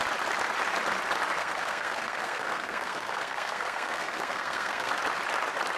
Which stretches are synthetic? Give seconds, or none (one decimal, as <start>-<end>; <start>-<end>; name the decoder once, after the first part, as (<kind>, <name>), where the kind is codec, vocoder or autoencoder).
1.4-4.9 (codec, SNAC)